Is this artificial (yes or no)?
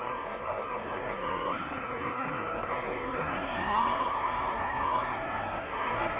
yes